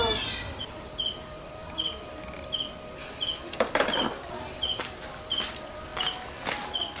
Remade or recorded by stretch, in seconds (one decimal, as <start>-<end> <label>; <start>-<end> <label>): 0.0-5.9 remade; 5.9-6.5 recorded; 6.5-7.0 remade